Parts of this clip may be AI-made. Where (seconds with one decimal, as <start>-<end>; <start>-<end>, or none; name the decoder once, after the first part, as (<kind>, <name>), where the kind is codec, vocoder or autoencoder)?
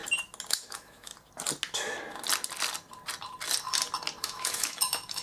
0.5-1.1 (autoencoder, DAC-VAE); 4.2-5.2